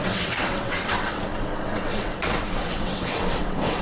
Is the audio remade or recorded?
remade